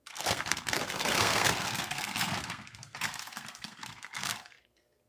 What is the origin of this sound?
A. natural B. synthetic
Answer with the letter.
B